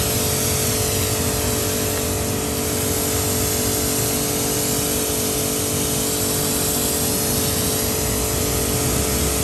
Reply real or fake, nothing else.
real